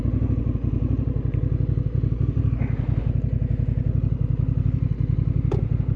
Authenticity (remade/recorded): recorded